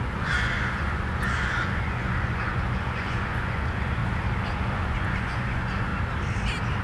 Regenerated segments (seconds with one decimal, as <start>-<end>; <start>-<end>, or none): 0.0-4.0; 4.5-5.9

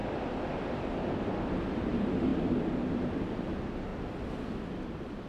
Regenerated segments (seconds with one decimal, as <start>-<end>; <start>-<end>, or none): 0.0-2.3; 2.9-3.9; 4.8-5.3

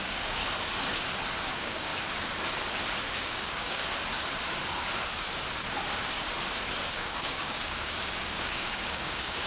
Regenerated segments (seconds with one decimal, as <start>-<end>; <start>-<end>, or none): 0.0-0.4; 1.5-1.9; 3.1-3.8; 6.9-9.5

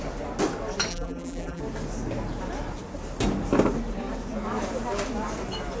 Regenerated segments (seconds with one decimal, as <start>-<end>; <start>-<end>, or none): 0.9-1.6